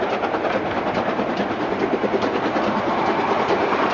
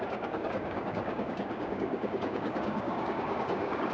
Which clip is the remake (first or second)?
second